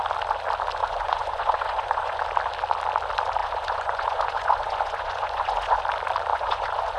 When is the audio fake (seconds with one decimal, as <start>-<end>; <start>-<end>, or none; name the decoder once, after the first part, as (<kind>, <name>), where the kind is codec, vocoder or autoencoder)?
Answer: 0.8-2.2 (vocoder, Vocos); 3.4-5.8; 6.3-7.0